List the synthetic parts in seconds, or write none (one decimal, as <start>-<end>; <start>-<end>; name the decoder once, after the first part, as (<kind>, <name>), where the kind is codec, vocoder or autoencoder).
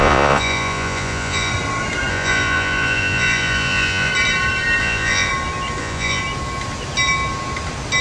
0.0-1.5 (vocoder, Vocos); 2.1-4.1; 4.8-5.3; 5.8-6.2